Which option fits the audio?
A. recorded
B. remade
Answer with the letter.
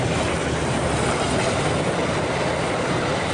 A